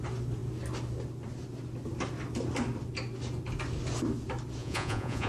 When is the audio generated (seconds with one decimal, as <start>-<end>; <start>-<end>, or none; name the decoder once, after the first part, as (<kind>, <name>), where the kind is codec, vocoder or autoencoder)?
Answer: 4.6-5.3 (vocoder, Vocos)